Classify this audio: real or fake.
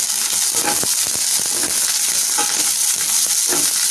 real